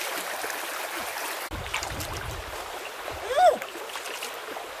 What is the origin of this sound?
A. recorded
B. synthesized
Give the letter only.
A